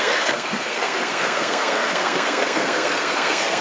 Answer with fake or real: fake